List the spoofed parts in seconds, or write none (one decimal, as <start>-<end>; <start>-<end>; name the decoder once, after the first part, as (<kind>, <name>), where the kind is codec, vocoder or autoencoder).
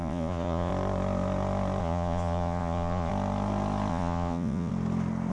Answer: 0.0-0.7 (vocoder, Vocos); 1.8-3.1; 3.9-4.7